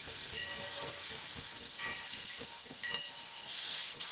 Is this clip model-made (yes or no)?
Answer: yes